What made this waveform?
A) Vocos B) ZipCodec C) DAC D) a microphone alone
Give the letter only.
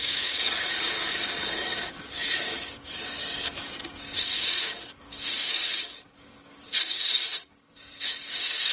C